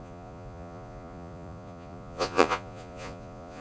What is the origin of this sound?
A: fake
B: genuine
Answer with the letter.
A